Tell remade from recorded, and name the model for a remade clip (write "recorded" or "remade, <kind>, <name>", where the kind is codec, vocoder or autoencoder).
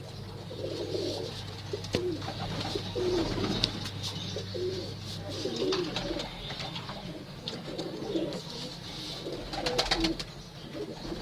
recorded